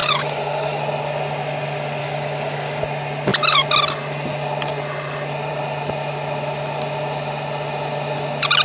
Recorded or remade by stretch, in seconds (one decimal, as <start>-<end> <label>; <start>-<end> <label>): 0.0-0.8 remade; 0.8-2.0 recorded; 2.0-2.8 remade; 2.8-8.6 recorded